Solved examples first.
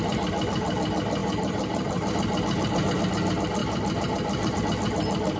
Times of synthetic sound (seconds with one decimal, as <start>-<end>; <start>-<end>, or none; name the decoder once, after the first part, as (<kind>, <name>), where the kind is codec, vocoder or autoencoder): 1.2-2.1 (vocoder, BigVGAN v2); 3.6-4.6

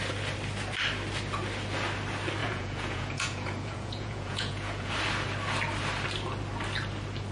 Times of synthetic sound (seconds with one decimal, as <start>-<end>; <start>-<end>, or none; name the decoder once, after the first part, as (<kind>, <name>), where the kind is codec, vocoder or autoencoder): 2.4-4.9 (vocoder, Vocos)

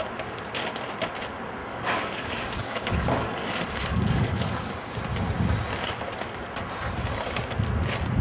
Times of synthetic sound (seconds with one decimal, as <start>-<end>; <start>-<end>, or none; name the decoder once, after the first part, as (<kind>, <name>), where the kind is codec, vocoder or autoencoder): 1.6-5.0 (codec, DAC)